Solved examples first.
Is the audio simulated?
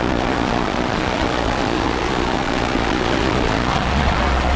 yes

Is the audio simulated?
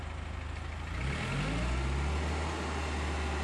no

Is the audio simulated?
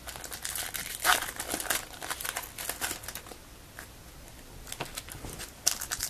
no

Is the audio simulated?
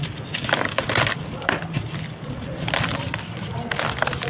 yes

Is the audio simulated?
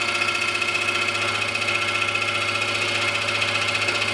no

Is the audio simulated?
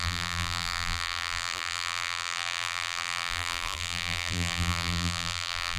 yes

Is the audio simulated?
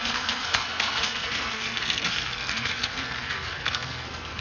yes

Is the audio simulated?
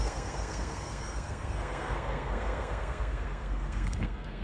yes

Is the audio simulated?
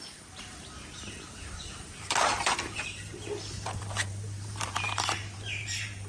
yes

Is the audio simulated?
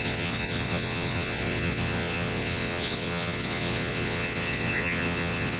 yes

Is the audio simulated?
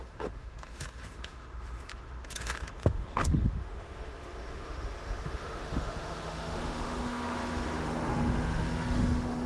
yes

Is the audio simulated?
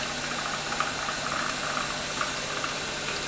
no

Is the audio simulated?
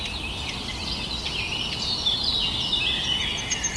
no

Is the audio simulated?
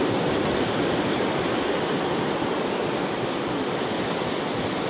no